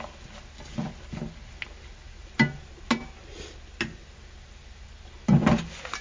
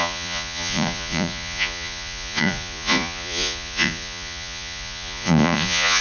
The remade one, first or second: second